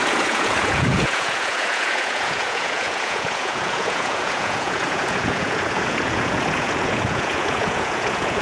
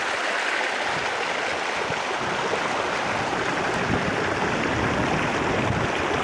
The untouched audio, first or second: second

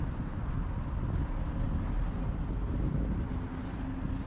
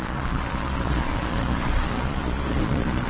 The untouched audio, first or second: first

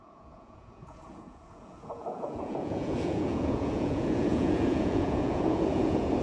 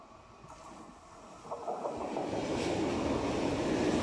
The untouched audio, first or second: second